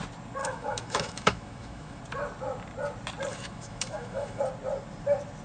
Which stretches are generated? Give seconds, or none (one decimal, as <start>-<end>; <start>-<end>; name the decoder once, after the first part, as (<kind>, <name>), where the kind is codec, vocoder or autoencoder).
0.4-2.0 (autoencoder, DAC-VAE); 3.3-4.4